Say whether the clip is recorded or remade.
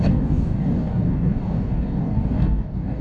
remade